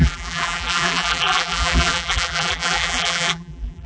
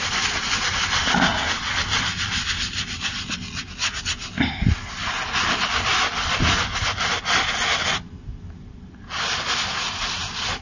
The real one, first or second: second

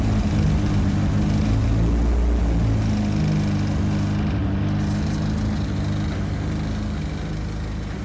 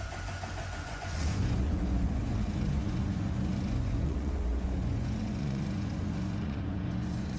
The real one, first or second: first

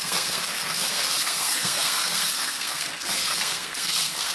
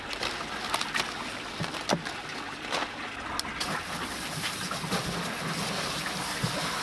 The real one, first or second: second